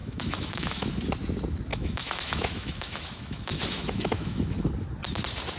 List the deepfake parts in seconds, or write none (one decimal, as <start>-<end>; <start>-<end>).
0.0-0.9; 1.7-4.7